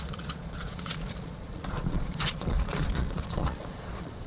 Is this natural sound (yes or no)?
no